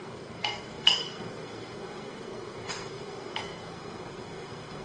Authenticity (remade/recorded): remade